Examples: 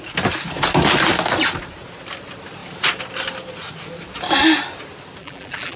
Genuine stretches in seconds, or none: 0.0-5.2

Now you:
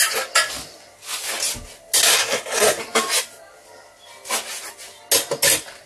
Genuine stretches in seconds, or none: 0.0-2.1; 2.8-5.9